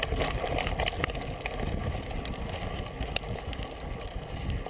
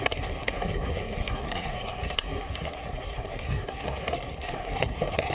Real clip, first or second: first